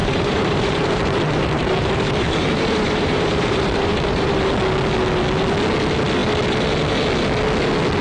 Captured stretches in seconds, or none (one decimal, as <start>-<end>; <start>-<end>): 4.4-8.0